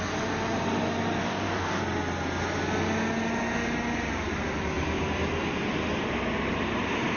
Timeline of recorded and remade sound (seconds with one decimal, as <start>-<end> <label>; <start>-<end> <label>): 0.0-1.2 recorded; 1.2-1.8 remade; 1.8-7.2 recorded